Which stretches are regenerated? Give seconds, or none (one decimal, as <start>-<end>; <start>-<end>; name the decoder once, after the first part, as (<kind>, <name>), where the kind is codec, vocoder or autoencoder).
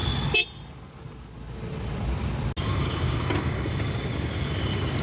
2.6-5.0 (codec, DAC)